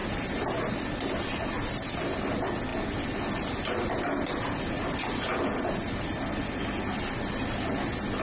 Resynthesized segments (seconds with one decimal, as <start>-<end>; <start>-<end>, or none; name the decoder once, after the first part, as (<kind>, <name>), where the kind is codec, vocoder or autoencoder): none